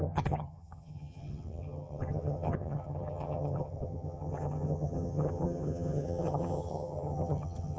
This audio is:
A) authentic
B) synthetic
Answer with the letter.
B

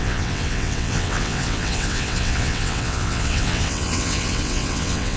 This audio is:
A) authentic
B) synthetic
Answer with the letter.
B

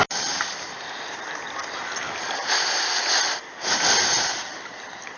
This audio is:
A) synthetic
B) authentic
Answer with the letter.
B